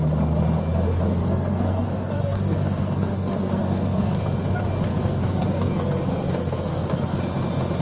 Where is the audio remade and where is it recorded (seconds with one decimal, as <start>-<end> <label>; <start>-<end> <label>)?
0.0-1.2 recorded; 1.2-4.2 remade; 4.2-4.9 recorded; 4.9-7.2 remade; 7.2-7.8 recorded